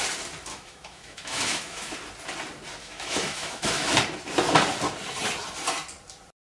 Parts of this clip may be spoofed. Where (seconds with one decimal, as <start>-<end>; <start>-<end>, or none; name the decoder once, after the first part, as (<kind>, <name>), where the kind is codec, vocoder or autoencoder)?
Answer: 0.5-1.9 (autoencoder, DAC-VAE); 2.8-3.9